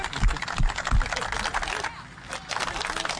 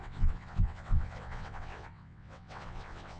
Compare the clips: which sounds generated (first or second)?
second